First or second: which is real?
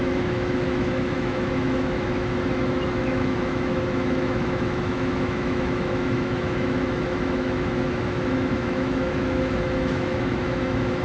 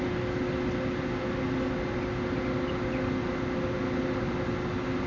second